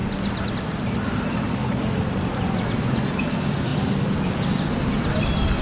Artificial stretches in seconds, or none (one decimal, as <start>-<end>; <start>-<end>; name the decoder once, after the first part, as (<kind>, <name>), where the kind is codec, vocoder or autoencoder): none